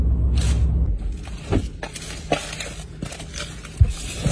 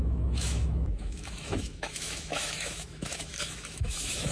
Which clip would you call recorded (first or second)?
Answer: first